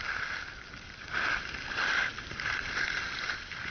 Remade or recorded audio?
recorded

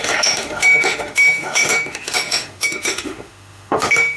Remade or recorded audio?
remade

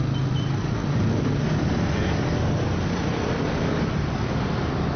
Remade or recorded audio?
recorded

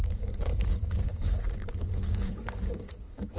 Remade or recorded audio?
remade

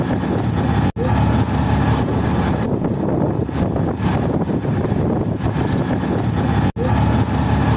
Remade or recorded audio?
recorded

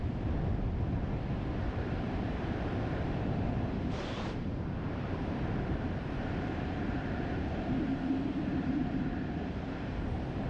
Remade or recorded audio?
remade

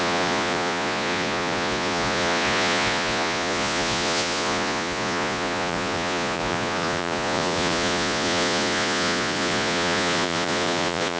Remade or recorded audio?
remade